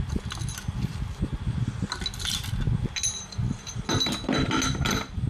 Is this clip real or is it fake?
real